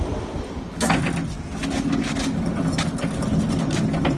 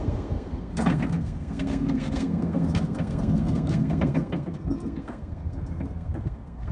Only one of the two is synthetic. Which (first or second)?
second